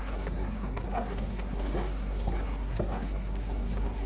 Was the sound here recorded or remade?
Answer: remade